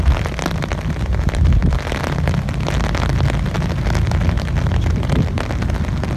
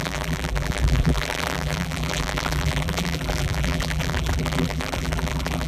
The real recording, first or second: first